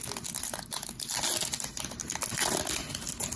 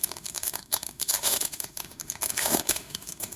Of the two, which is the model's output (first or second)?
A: second